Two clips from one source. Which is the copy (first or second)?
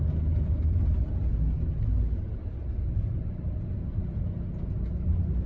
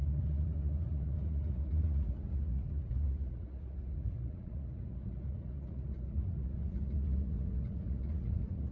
second